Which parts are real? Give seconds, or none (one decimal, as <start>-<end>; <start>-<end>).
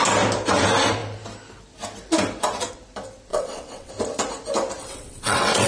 0.0-3.3; 3.9-4.8